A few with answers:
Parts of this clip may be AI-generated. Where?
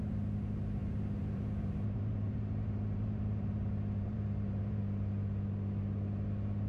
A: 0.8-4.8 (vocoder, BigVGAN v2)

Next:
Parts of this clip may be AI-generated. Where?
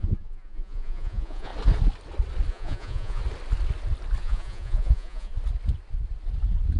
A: 0.0-1.5 (vocoder, Vocos); 2.5-3.2; 4.2-5.3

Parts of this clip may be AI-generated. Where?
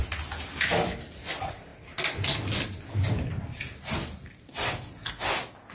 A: none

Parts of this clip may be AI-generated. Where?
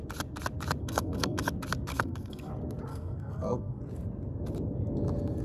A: 0.8-1.5 (codec, SNAC); 1.9-2.5; 2.9-3.8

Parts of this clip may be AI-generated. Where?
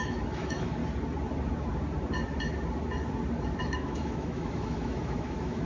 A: 0.0-0.8 (autoencoder, DAC-VAE); 3.6-5.7